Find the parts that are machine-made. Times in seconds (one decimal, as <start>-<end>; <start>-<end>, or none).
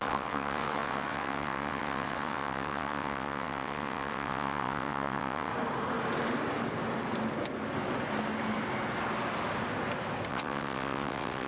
0.0-5.5; 10.3-11.5